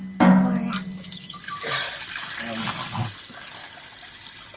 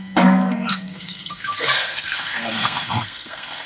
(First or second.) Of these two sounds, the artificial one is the second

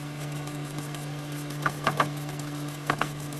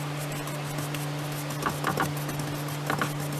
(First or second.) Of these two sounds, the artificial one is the first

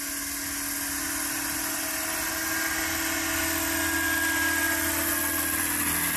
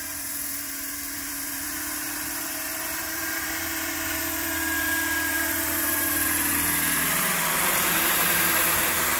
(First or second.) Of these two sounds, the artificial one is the second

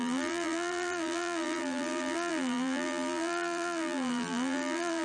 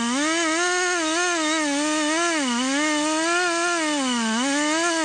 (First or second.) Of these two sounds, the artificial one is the first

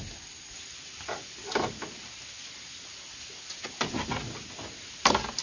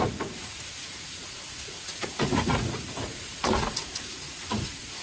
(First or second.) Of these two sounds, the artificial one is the second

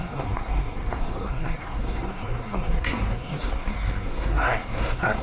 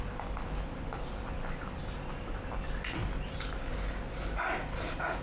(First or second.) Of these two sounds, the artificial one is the first